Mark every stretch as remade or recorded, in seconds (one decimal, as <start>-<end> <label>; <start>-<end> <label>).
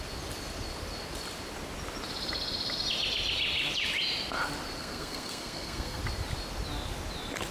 0.0-4.8 recorded; 4.8-6.0 remade; 6.0-7.5 recorded